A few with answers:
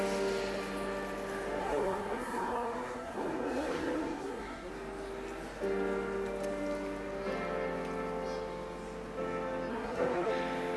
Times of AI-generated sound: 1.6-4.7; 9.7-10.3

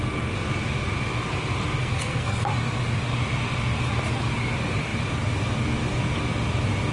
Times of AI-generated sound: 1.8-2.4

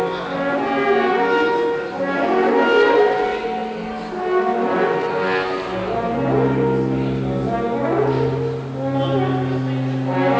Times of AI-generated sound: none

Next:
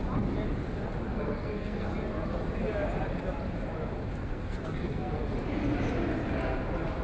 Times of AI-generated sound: 1.1-1.9; 4.2-5.2